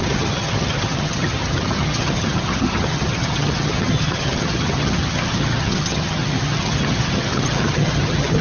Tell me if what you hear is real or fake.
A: fake